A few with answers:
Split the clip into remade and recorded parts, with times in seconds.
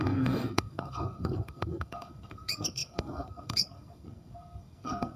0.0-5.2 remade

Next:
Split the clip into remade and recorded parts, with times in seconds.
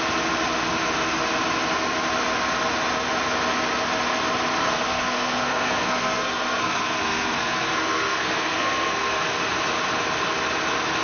0.0-4.6 recorded; 4.6-9.2 remade; 9.2-11.0 recorded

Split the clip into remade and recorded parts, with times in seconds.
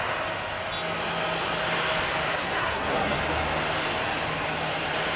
0.0-2.3 recorded; 2.3-3.2 remade; 3.2-5.2 recorded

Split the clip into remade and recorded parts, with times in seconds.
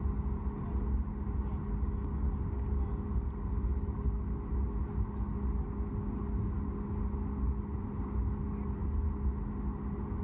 0.0-10.2 recorded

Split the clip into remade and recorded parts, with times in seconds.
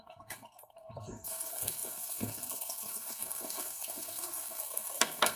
0.0-5.4 remade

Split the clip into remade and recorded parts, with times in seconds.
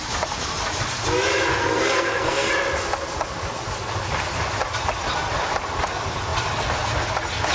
0.0-1.5 recorded; 1.5-2.5 remade; 2.5-7.5 recorded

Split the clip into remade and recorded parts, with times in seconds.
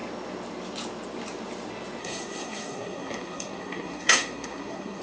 0.0-2.0 recorded; 2.0-5.0 remade